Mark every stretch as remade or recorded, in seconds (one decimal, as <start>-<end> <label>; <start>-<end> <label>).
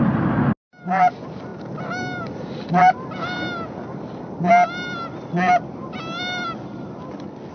0.0-7.5 recorded